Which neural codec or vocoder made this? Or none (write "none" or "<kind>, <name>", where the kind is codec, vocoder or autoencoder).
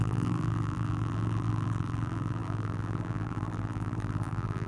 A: vocoder, BigVGAN v2